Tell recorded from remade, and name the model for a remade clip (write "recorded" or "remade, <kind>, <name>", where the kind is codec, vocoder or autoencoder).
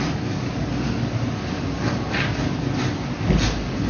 recorded